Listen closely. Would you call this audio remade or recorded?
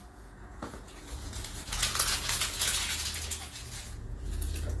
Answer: remade